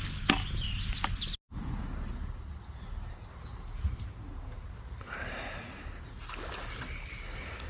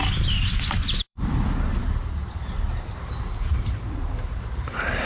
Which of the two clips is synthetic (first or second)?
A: second